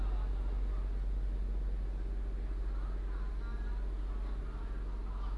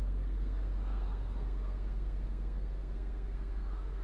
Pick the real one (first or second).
first